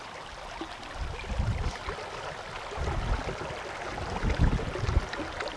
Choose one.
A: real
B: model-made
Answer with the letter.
A